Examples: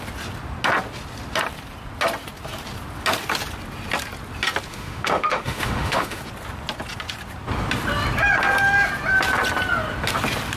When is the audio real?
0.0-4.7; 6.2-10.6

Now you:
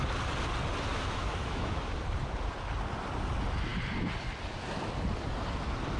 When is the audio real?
0.0-0.9; 1.8-6.0

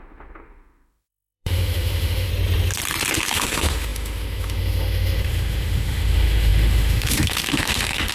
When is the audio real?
2.3-3.2

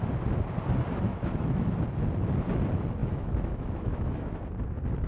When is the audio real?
0.0-1.1; 1.7-3.0; 4.4-5.1